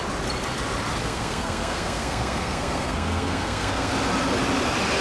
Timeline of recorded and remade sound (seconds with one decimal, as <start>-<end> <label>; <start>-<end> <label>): 0.0-0.9 recorded; 0.9-3.9 remade; 3.9-5.0 recorded

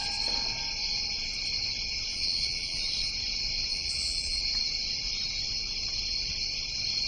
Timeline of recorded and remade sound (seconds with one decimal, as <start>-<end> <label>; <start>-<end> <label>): 0.0-2.1 recorded; 2.1-3.1 remade; 3.1-3.7 recorded; 3.7-4.4 remade; 4.4-7.1 recorded

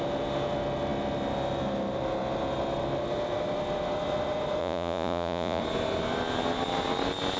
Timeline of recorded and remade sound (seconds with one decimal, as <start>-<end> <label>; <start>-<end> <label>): 0.0-4.6 recorded; 4.6-5.6 remade; 5.6-7.4 recorded

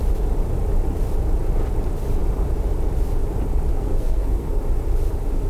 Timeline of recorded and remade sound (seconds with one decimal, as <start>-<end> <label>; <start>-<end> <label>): 0.0-3.7 recorded; 3.7-4.6 remade; 4.6-5.5 recorded

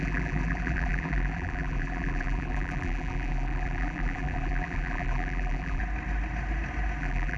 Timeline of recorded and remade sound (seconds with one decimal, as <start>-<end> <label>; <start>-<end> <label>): 0.0-5.8 remade; 5.8-7.0 recorded; 7.0-7.4 remade

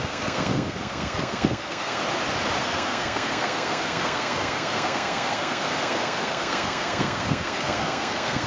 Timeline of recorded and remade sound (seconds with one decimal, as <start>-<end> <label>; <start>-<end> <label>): 0.0-2.0 remade; 2.0-2.6 recorded; 2.6-8.5 remade

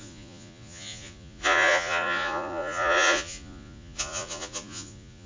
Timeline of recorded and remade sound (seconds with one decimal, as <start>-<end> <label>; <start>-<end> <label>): 0.0-5.3 remade